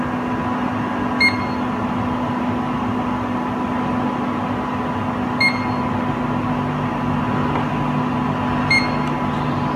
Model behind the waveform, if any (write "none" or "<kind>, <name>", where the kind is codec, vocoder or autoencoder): none